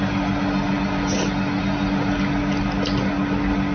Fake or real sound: real